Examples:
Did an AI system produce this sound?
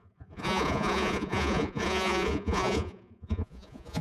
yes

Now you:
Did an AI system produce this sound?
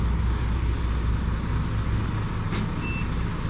no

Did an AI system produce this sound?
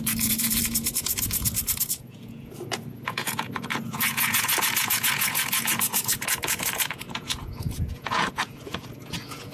yes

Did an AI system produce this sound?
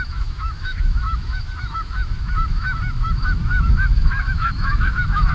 yes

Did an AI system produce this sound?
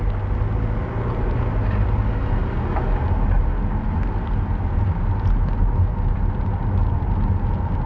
no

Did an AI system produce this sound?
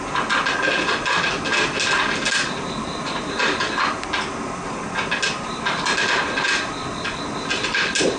no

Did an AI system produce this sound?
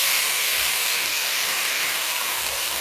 yes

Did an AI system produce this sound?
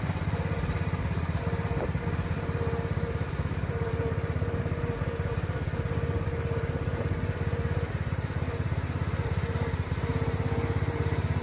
no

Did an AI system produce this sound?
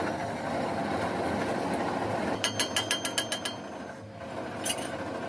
no